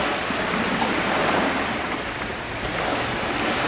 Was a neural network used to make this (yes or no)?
no